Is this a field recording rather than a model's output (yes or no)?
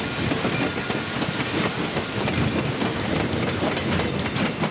yes